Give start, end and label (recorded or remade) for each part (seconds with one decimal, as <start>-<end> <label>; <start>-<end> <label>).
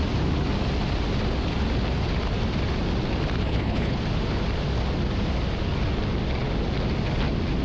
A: 0.0-3.4 recorded; 3.4-4.0 remade; 4.0-7.6 recorded